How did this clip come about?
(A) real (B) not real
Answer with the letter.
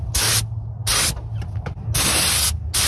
A